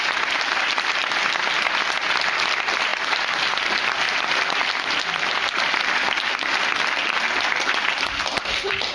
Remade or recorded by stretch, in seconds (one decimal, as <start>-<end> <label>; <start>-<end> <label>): 0.0-8.9 recorded